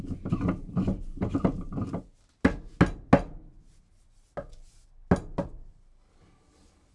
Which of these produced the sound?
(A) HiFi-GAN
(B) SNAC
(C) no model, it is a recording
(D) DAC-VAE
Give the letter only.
C